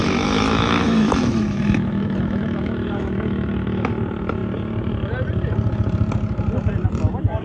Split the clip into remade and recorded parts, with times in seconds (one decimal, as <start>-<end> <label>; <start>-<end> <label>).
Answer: 0.0-3.9 remade; 3.9-7.4 recorded